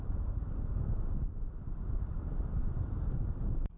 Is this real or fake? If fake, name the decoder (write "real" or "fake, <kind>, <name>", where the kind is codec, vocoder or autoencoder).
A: real